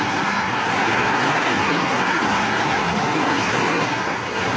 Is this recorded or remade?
remade